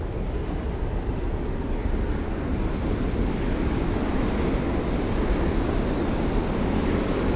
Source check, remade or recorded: recorded